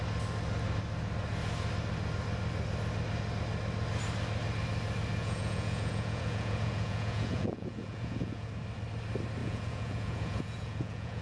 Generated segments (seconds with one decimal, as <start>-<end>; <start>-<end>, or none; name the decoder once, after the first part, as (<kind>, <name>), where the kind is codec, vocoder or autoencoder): 5.2-8.5 (vocoder, Vocos); 9.4-11.2

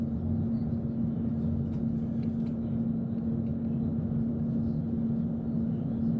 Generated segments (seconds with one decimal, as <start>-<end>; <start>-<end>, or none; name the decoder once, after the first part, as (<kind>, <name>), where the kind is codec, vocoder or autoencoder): none

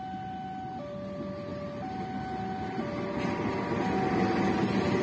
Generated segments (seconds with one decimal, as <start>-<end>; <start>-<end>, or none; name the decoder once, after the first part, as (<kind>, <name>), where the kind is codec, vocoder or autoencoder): none

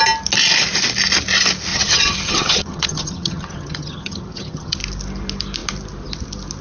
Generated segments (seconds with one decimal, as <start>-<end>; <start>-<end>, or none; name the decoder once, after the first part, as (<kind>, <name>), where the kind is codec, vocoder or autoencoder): 1.7-4.8 (vocoder, HiFi-GAN)

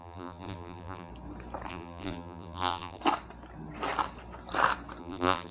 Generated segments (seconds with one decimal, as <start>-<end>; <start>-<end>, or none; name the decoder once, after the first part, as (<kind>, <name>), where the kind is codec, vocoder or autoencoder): 0.0-1.1 (vocoder, BigVGAN v2); 1.7-3.0; 5.0-5.5